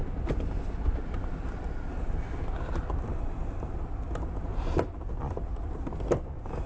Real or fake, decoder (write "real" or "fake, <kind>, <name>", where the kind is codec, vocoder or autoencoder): real